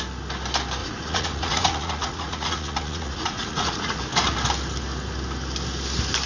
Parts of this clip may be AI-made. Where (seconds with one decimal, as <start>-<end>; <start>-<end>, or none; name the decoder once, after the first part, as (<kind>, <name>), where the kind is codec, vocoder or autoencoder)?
0.8-4.0 (vocoder, Vocos)